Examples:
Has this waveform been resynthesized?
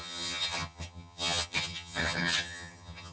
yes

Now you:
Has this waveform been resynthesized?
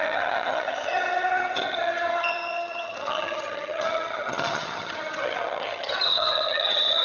yes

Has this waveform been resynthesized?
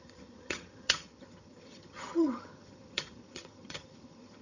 yes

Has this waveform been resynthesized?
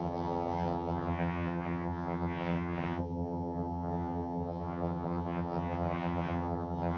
yes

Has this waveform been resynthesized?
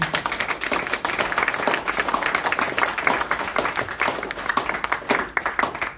no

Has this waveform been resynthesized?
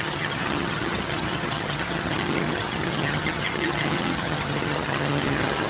yes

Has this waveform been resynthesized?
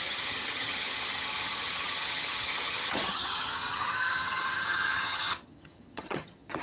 yes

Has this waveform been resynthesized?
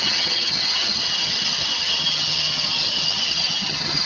yes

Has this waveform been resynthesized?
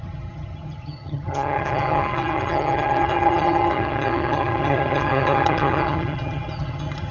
yes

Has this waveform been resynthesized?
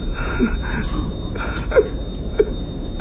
no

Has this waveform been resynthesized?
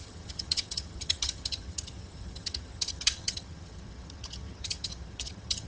yes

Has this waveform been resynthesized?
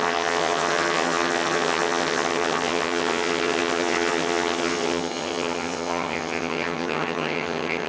yes